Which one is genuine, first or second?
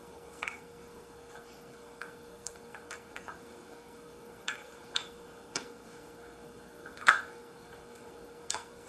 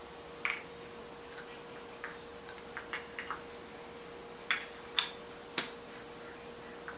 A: second